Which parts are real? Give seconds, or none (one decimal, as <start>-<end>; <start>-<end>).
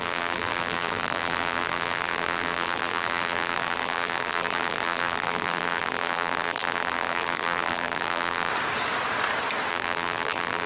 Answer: 8.5-9.7